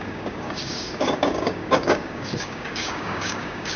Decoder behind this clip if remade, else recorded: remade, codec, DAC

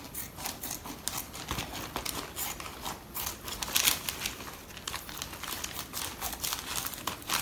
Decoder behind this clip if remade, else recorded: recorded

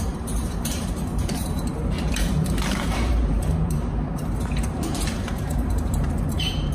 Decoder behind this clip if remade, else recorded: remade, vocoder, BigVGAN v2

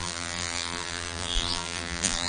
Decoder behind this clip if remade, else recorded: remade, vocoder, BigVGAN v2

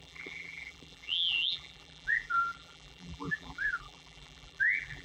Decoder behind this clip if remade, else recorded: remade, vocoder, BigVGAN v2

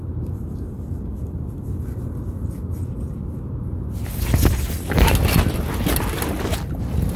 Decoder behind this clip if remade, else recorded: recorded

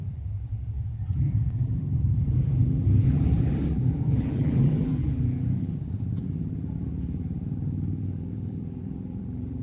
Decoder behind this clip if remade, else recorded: remade, vocoder, BigVGAN v2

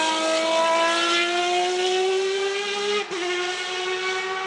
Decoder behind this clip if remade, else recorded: recorded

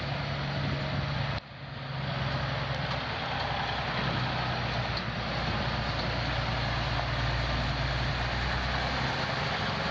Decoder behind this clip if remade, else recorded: recorded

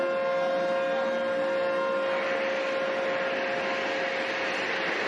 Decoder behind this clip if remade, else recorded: recorded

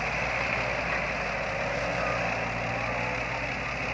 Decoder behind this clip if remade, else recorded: recorded